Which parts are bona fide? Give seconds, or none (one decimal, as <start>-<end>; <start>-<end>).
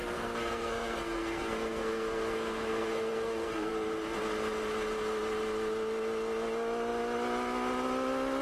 3.7-8.4